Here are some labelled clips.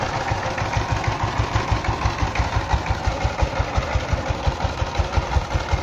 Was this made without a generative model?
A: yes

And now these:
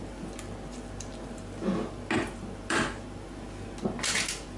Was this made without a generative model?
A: yes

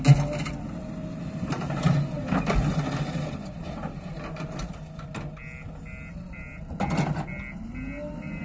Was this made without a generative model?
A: yes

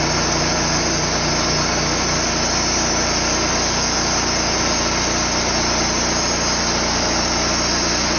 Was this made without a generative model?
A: yes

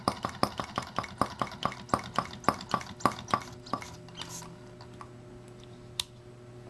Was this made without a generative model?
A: yes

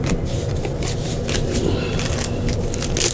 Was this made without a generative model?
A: yes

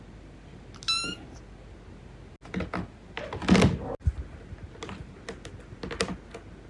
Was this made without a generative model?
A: yes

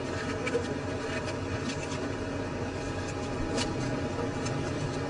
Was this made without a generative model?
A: yes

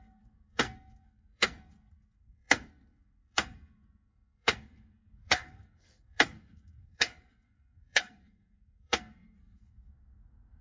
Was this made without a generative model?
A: no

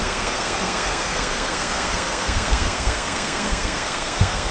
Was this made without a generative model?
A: no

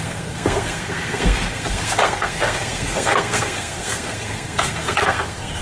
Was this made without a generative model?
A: no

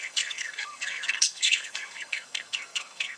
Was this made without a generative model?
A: no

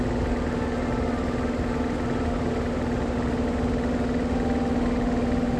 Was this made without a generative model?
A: yes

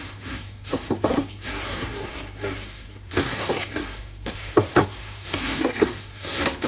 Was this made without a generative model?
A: no